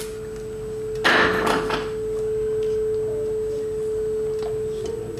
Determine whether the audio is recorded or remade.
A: recorded